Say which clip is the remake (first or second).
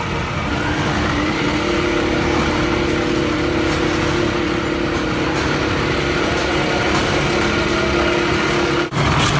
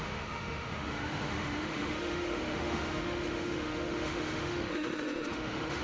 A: second